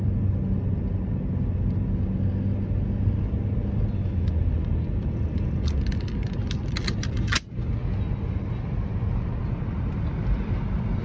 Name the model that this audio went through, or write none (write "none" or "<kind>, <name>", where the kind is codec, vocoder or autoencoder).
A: none